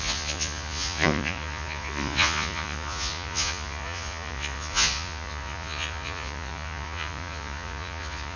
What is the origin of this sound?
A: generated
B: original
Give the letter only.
A